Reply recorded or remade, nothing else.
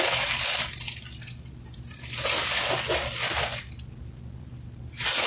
recorded